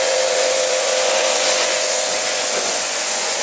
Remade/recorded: remade